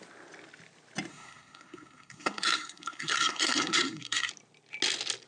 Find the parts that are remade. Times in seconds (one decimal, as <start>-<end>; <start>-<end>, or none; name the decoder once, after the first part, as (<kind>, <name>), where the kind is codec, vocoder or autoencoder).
1.1-4.3 (codec, SNAC)